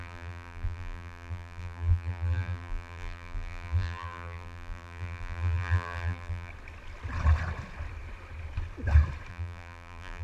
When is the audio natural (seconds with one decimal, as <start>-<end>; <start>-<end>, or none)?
6.5-9.3